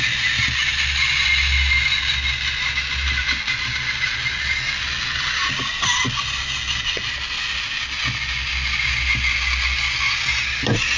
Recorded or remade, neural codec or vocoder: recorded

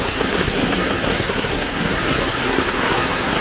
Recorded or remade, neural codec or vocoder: remade, codec, SNAC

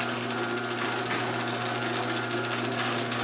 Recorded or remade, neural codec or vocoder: recorded